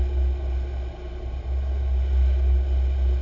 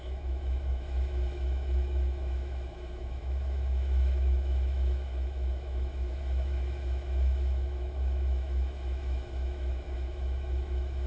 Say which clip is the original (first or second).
first